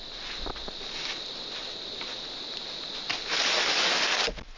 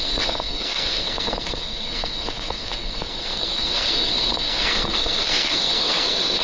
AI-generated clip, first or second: second